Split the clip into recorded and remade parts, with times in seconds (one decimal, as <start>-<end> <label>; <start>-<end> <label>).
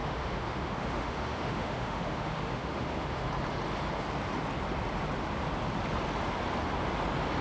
0.0-3.3 remade; 3.3-7.4 recorded